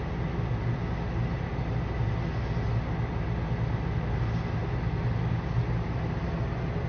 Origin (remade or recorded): recorded